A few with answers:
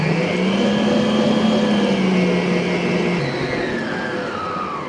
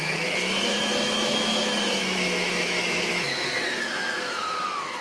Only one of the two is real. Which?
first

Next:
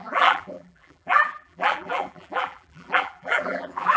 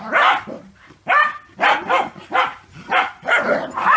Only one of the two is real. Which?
second